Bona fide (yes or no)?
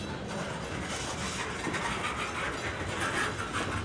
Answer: yes